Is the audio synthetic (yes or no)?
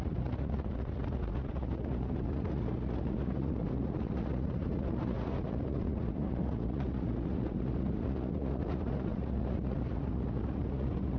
yes